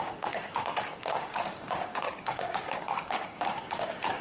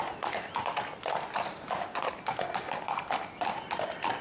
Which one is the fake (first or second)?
first